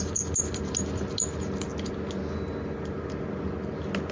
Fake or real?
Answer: real